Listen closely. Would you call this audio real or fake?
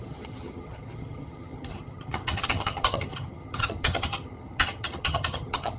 fake